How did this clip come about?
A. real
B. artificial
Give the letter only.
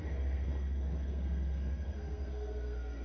B